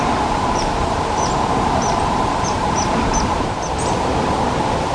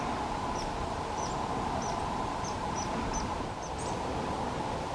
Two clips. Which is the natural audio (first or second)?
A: second